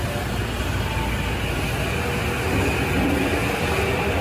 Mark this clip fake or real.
real